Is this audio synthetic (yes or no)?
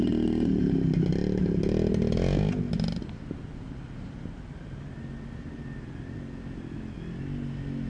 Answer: no